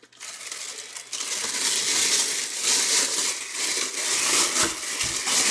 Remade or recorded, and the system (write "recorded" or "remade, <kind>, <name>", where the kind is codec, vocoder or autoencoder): recorded